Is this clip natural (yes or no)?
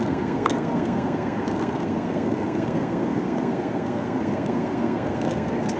no